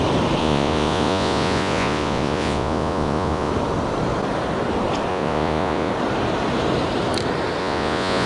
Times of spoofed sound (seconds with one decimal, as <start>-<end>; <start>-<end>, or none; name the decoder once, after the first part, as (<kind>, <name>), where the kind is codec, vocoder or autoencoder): 0.4-3.5 (vocoder, Vocos); 5.1-5.9; 7.6-8.3